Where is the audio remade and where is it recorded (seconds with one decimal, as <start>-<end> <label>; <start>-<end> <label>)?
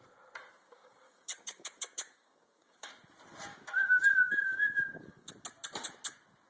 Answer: 0.0-0.6 recorded; 0.6-2.9 remade; 2.9-3.5 recorded; 3.5-5.3 remade; 5.3-6.5 recorded